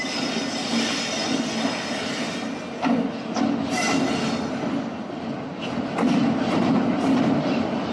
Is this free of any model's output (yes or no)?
yes